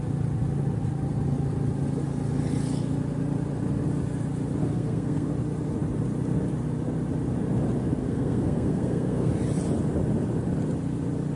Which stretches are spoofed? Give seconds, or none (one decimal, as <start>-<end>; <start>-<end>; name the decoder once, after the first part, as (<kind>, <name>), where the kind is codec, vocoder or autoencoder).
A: 4.6-5.3 (codec, SNAC); 8.0-9.3